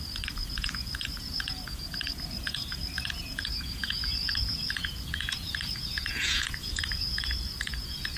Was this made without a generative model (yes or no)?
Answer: no